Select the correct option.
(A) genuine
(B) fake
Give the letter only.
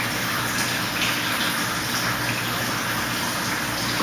A